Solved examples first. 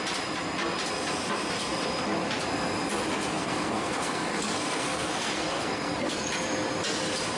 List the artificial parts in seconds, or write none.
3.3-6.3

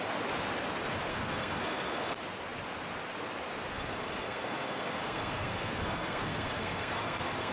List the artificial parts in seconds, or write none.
1.1-2.1; 3.7-7.5

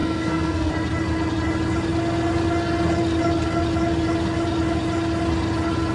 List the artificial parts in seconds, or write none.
0.0-0.7

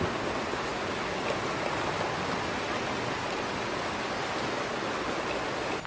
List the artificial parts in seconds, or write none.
none